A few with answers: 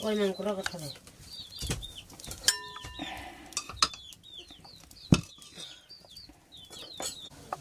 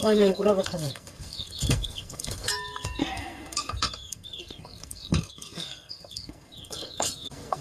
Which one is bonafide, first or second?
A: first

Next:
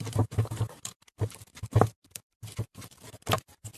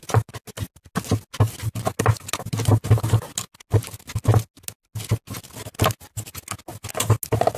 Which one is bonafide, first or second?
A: second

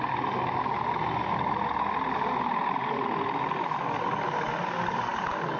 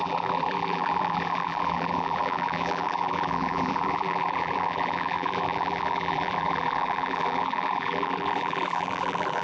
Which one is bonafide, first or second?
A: first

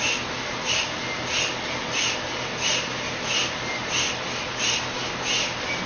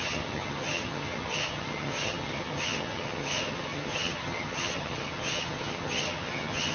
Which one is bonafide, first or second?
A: first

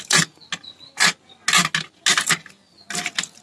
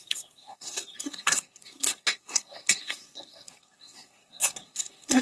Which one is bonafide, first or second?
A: first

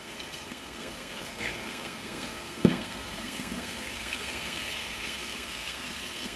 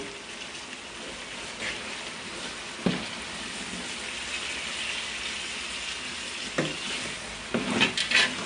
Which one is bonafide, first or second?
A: second